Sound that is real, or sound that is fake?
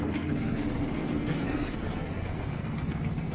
fake